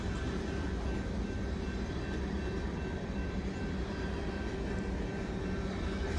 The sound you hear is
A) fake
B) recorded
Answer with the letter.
B